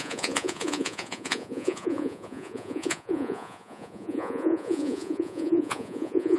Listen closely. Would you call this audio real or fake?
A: fake